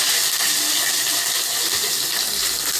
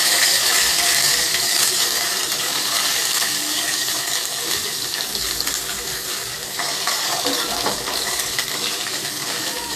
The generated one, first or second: second